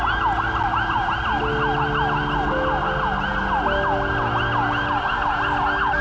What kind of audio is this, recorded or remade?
recorded